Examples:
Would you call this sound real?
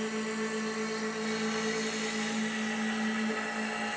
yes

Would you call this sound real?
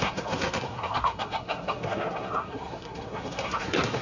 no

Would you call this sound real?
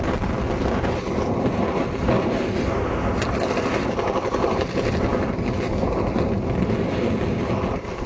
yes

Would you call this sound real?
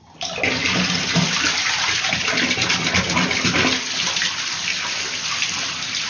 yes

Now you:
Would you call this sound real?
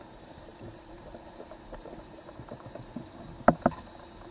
no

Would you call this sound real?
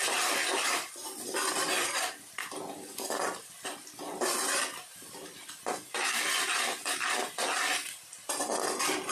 yes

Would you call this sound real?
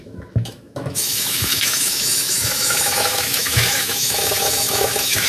no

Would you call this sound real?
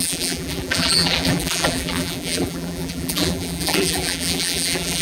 no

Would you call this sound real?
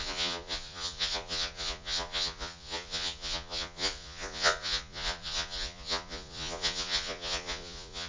no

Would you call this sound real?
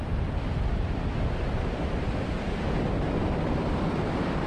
yes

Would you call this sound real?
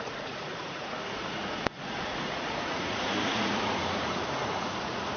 no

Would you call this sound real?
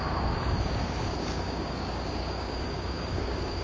no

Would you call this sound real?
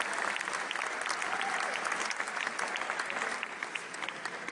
yes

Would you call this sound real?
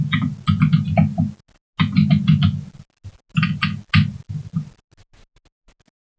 yes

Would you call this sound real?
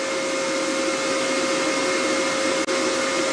yes